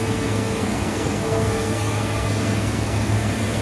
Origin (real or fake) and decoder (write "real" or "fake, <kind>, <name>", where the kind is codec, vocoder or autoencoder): fake, codec, SNAC